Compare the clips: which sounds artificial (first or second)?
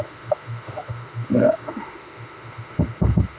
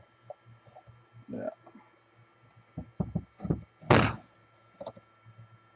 first